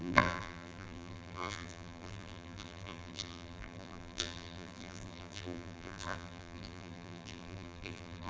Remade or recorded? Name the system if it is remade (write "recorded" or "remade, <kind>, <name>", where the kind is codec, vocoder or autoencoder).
remade, vocoder, BigVGAN v2